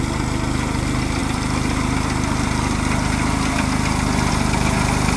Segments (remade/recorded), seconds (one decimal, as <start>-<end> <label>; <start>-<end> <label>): 0.0-5.2 recorded